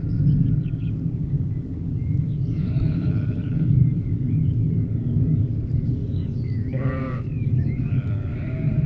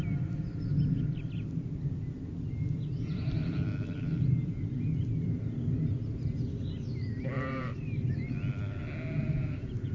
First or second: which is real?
second